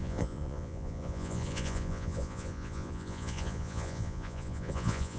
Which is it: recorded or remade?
remade